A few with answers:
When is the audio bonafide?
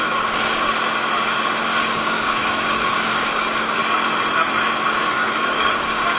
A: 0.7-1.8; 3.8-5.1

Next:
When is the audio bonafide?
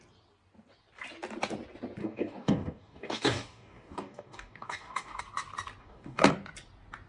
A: 0.0-2.0; 5.2-5.8; 6.3-7.1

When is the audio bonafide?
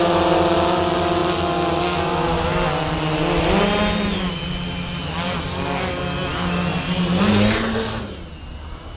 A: 0.0-9.0